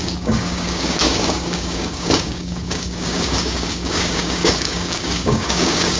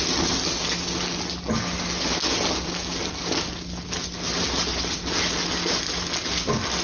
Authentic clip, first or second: second